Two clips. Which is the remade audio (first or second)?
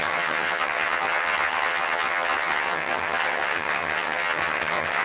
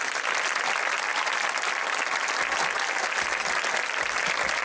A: first